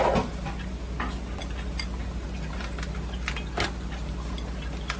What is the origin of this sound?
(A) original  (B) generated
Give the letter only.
A